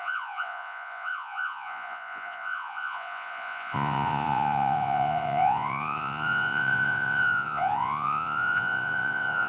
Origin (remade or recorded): remade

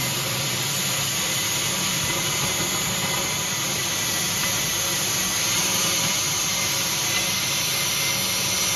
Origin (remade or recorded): recorded